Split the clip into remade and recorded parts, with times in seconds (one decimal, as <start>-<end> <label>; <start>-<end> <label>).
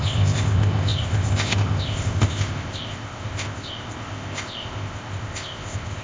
0.0-6.0 remade